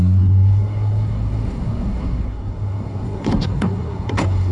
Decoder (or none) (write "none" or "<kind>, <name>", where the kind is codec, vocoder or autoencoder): codec, SNAC